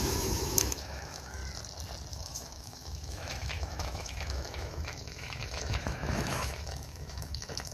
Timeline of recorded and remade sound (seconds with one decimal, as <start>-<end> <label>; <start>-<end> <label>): 0.0-1.4 remade; 1.4-2.1 recorded; 2.1-7.7 remade

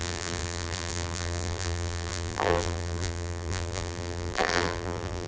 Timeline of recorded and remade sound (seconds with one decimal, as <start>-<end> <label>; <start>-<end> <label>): 0.0-5.3 remade

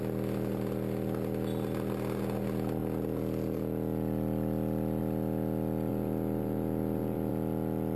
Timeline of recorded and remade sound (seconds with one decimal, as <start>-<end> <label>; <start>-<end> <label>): 0.0-5.9 recorded; 5.9-7.3 remade; 7.3-8.0 recorded

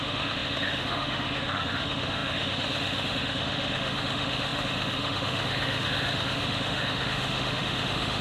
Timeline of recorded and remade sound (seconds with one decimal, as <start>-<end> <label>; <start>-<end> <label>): 0.0-8.2 remade

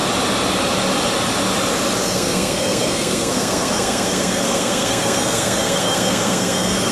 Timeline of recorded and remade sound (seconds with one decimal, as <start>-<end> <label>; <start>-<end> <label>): 0.0-2.0 recorded; 2.0-6.9 remade

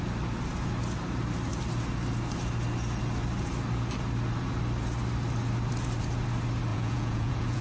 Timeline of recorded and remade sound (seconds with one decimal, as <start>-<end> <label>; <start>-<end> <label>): 0.0-6.7 recorded; 6.7-7.6 remade

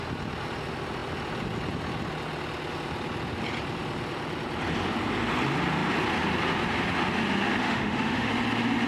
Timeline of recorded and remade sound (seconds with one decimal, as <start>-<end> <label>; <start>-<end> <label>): 0.0-7.6 recorded; 7.6-8.3 remade; 8.3-8.9 recorded

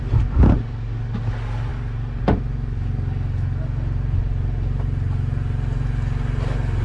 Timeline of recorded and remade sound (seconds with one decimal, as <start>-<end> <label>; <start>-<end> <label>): 0.0-6.8 recorded